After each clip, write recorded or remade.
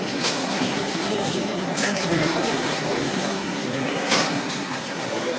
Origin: remade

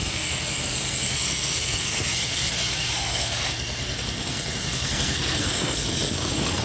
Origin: remade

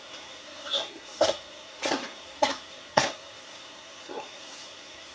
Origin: remade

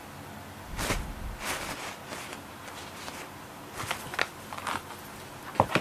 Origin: recorded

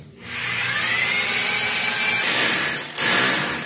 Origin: recorded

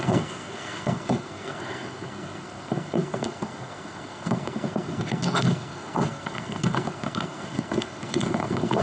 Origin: remade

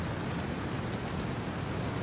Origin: recorded